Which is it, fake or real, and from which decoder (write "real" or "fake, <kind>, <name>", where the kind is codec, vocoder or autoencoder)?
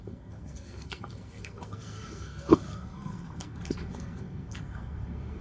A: fake, codec, SNAC